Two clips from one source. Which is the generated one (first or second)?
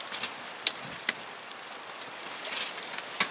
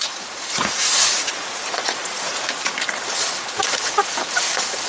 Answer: second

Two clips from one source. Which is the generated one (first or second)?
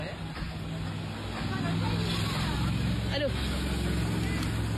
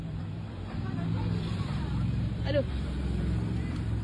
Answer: second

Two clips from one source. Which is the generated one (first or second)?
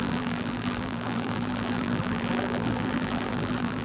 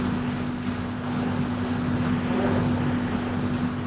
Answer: first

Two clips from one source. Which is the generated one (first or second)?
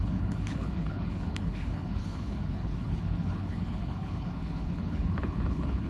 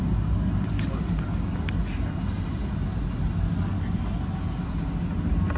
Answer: first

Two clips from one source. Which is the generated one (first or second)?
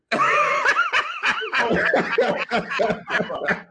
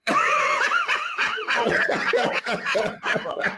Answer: second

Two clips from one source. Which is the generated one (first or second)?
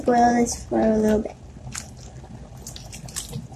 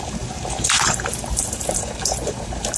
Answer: second